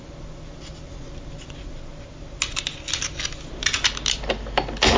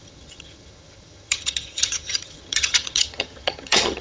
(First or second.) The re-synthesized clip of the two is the second